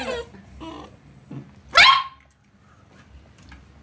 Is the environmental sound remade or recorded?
recorded